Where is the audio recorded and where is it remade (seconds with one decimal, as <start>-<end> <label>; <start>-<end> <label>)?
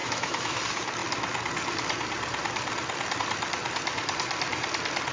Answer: 0.0-0.6 remade; 0.6-5.1 recorded